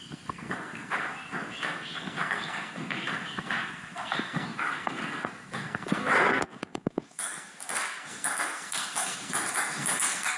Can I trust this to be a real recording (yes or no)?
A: no